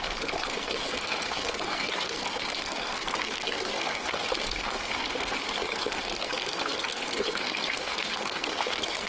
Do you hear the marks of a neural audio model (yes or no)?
yes